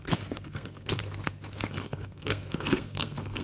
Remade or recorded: remade